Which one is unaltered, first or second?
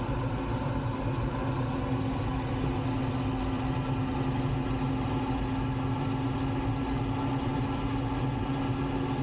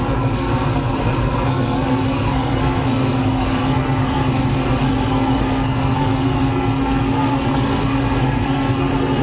first